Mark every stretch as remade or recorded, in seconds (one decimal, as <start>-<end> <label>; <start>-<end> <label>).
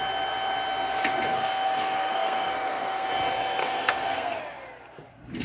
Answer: 0.0-1.3 recorded; 1.3-3.1 remade; 3.1-3.6 recorded; 3.6-4.4 remade; 4.4-5.4 recorded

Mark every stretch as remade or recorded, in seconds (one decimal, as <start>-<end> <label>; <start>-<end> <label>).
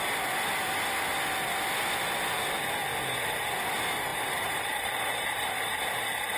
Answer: 0.0-4.1 recorded; 4.1-5.8 remade; 5.8-6.4 recorded